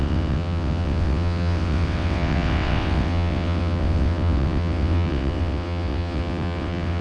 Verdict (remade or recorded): remade